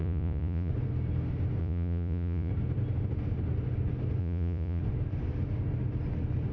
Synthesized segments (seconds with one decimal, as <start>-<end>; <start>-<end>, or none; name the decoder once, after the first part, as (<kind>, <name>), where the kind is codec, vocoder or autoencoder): 0.0-0.7 (vocoder, Vocos); 1.6-2.5; 4.2-4.8